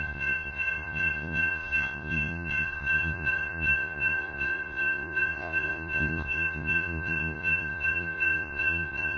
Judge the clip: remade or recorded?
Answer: remade